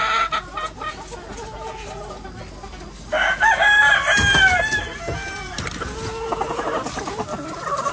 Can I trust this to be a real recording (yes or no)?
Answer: yes